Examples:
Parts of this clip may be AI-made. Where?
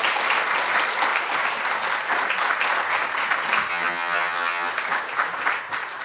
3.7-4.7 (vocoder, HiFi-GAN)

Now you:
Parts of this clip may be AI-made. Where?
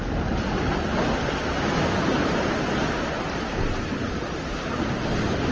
none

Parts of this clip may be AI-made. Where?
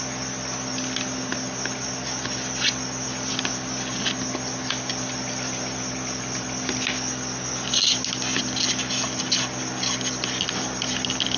none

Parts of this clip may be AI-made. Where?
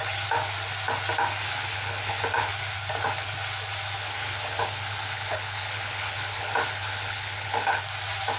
1.4-2.5 (codec, HILCodec); 4.0-7.8